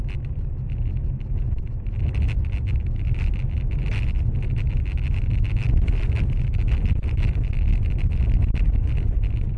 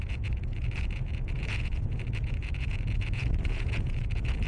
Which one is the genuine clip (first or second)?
first